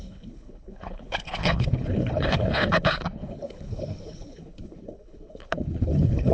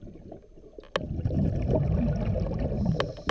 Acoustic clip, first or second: second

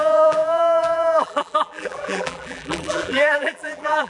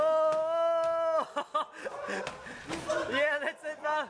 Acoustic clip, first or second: second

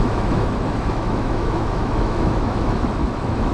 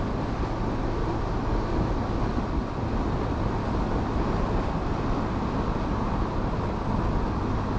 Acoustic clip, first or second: second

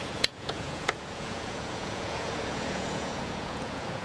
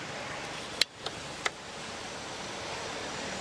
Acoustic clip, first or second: second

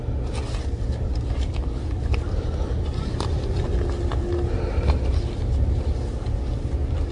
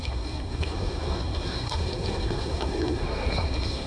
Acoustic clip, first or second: first